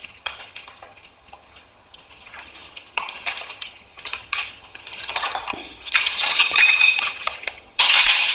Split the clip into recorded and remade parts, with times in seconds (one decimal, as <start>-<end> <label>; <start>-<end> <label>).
0.0-8.3 remade